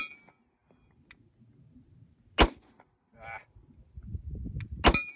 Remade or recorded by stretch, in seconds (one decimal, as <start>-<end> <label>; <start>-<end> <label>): 0.0-5.2 recorded